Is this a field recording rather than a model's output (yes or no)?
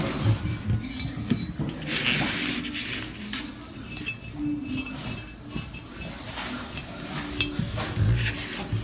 yes